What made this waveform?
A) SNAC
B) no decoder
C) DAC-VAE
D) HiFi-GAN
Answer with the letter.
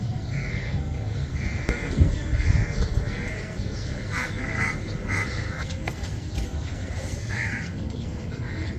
A